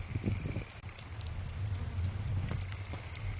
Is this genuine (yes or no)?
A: yes